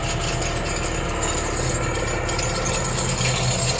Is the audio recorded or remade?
recorded